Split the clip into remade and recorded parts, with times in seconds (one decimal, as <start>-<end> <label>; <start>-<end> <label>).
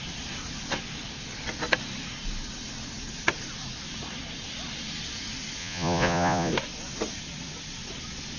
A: 0.0-5.6 recorded; 5.6-6.5 remade; 6.5-8.4 recorded